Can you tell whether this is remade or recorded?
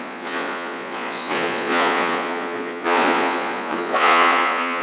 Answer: remade